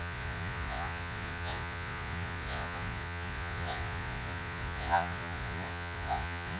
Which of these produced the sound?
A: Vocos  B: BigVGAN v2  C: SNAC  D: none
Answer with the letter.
A